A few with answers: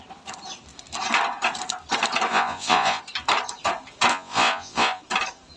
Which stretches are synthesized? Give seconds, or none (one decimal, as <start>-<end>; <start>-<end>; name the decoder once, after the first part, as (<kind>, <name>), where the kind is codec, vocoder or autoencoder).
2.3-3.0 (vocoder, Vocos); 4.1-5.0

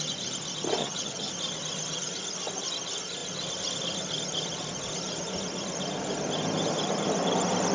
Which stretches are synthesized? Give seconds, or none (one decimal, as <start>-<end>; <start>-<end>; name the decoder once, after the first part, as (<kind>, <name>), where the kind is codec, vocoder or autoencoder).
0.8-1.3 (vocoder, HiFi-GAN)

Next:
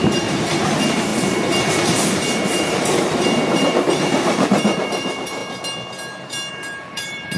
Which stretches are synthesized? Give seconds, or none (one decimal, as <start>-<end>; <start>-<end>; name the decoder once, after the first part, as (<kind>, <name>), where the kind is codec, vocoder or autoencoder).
0.0-5.4 (vocoder, BigVGAN v2); 6.5-7.4

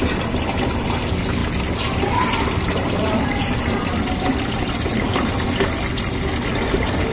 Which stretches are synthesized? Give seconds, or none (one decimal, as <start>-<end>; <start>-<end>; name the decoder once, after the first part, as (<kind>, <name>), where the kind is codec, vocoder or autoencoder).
1.4-5.1 (vocoder, BigVGAN v2)

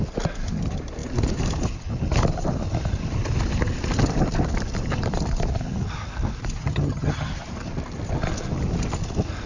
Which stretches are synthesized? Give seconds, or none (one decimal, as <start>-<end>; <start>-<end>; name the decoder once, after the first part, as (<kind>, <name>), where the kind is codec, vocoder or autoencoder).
6.6-7.3 (vocoder, HiFi-GAN)